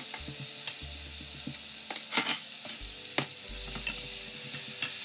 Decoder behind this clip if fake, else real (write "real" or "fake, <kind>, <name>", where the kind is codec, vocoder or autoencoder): real